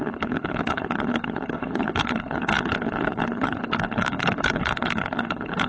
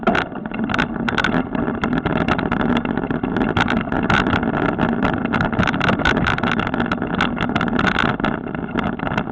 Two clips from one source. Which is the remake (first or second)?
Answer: first